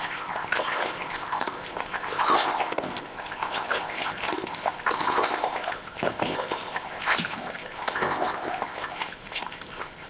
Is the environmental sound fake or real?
fake